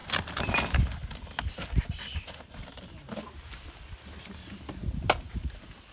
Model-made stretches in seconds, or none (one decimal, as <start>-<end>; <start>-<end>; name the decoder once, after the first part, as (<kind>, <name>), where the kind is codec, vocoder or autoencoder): none